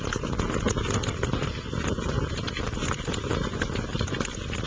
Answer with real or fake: real